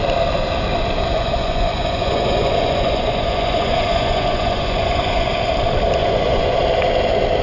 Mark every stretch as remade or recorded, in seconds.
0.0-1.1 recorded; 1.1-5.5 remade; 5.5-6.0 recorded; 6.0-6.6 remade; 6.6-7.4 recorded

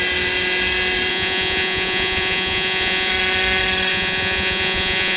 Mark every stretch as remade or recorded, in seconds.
0.0-1.1 recorded; 1.1-3.1 remade; 3.1-3.9 recorded; 3.9-5.2 remade